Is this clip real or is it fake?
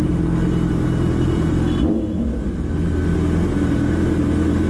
real